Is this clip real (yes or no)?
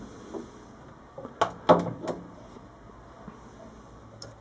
yes